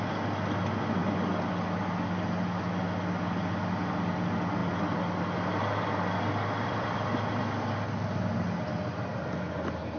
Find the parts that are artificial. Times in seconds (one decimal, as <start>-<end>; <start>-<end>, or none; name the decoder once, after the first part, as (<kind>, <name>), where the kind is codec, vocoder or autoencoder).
none